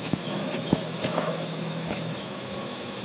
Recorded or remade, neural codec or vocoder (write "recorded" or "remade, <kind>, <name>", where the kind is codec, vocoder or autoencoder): remade, autoencoder, DAC-VAE